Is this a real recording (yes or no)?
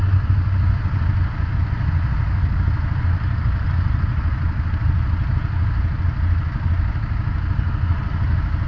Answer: yes